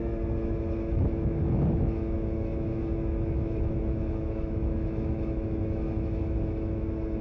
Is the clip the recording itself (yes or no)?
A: no